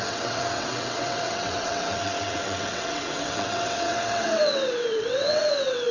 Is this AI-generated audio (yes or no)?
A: yes